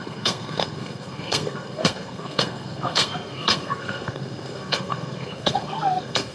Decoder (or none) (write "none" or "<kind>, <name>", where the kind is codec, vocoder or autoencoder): codec, SNAC